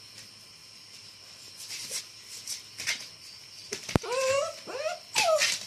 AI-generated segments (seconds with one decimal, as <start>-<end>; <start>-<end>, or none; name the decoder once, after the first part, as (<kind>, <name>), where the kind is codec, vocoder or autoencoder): 0.6-2.0 (vocoder, BigVGAN v2); 3.6-4.4